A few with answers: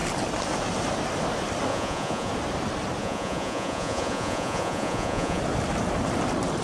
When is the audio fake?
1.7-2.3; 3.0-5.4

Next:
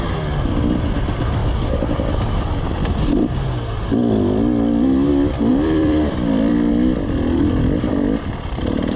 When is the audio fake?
5.5-6.7